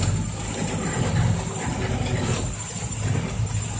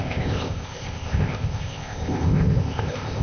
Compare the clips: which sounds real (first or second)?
first